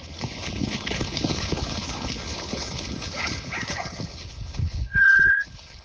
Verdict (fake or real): fake